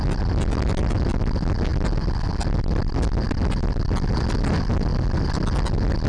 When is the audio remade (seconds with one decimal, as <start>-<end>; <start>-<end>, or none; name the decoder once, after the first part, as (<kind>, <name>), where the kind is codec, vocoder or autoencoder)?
none